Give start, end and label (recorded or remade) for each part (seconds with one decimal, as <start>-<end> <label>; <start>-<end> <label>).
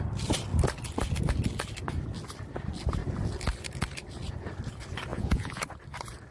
0.0-5.1 recorded; 5.1-5.6 remade; 5.6-6.3 recorded